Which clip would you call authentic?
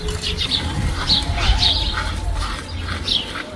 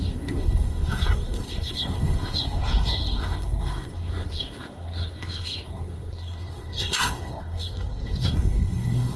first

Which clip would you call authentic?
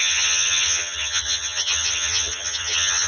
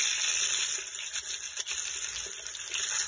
second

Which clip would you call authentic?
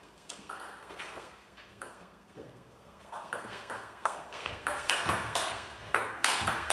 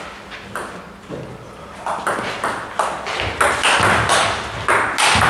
second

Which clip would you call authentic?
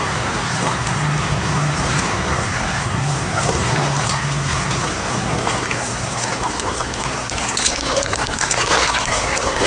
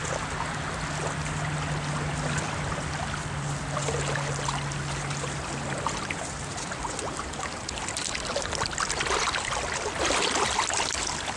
second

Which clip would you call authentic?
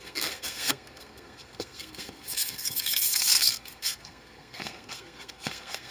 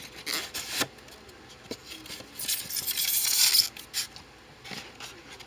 second